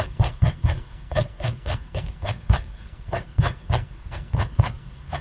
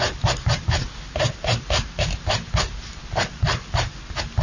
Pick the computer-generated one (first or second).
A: first